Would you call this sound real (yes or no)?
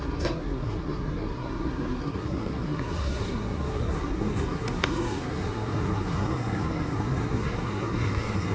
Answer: no